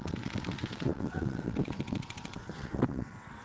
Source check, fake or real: fake